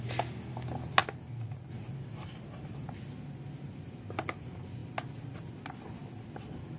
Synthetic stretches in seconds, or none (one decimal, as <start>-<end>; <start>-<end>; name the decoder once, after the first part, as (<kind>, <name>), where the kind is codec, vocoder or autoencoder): none